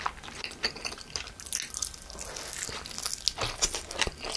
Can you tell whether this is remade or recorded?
recorded